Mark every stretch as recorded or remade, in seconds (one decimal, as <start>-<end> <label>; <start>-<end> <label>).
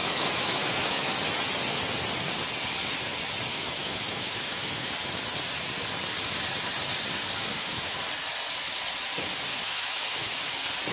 0.0-1.1 remade; 1.1-3.5 recorded; 3.5-4.9 remade; 4.9-7.5 recorded; 7.5-8.0 remade; 8.0-9.5 recorded; 9.5-10.4 remade; 10.4-10.9 recorded